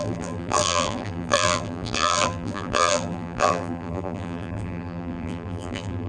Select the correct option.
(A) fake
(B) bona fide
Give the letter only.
A